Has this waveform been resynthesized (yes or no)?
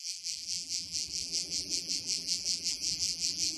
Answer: yes